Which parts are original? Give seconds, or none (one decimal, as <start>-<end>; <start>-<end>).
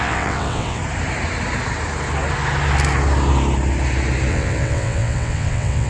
0.8-4.3